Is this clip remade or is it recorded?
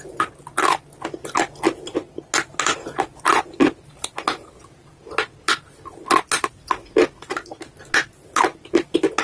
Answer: recorded